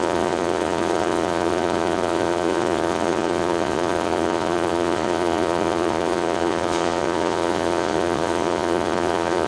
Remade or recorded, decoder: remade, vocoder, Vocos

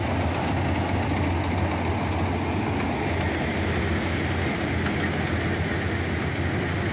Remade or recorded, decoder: recorded